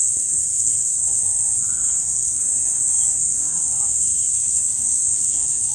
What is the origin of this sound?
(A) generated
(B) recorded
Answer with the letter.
A